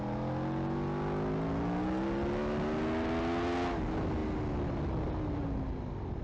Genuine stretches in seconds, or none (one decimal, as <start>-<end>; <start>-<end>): 0.0-6.2

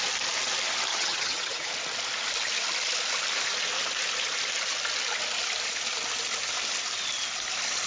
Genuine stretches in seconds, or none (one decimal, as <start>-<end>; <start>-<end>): 0.0-0.9; 1.7-7.9